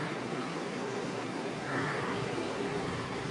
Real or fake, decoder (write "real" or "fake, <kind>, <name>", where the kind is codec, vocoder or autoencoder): fake, codec, SNAC